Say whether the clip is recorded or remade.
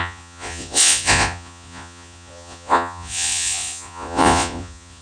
remade